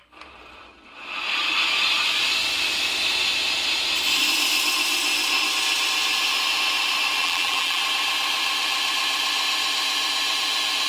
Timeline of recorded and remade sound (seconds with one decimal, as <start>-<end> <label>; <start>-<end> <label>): 0.0-7.2 recorded; 7.2-7.8 remade; 7.8-10.9 recorded